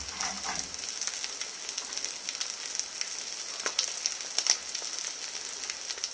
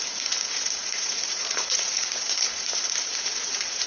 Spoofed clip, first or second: second